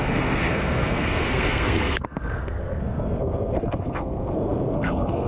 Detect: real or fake fake